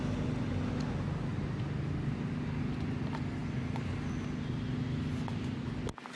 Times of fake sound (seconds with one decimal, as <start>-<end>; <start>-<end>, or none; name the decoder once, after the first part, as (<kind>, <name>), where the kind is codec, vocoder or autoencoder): none